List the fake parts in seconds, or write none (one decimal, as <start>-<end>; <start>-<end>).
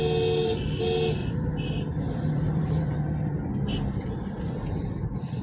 1.2-4.4